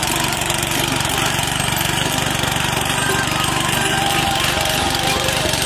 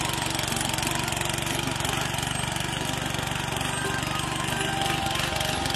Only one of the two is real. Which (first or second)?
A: second